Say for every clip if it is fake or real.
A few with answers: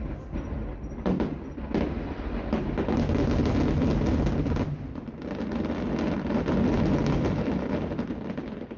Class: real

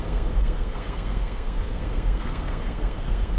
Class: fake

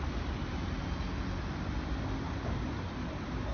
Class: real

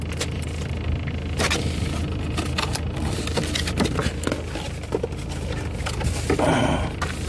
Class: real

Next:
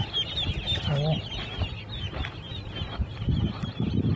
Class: real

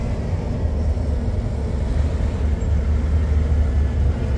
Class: real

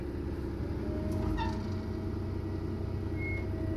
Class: real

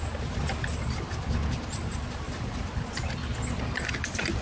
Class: real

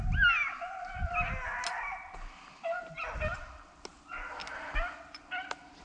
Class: real